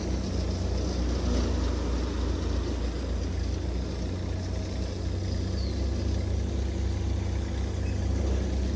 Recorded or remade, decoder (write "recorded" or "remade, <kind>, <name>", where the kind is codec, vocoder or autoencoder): recorded